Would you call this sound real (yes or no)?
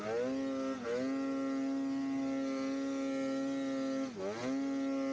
yes